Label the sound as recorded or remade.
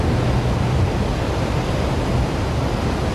recorded